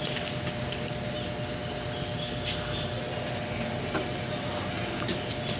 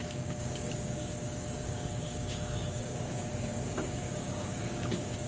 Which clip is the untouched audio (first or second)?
first